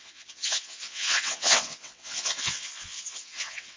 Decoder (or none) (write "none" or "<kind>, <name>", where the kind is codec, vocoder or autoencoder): vocoder, WaveNeXt